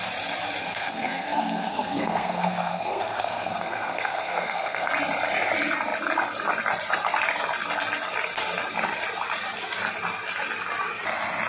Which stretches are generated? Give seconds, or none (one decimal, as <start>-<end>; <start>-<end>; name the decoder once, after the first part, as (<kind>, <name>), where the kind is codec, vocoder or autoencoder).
0.6-4.9 (codec, SNAC)